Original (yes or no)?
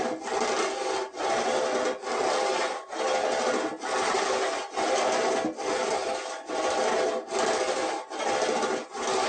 yes